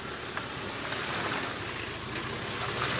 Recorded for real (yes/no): yes